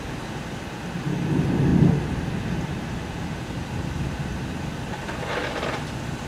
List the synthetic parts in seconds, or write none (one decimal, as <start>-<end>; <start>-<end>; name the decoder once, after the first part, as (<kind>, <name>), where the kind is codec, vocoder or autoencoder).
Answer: none